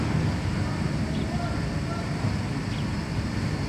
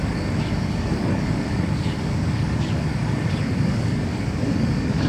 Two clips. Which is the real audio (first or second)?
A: first